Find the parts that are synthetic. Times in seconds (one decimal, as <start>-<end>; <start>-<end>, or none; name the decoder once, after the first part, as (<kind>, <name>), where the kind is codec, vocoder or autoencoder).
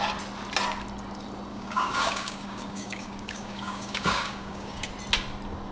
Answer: 1.5-4.9 (codec, DAC)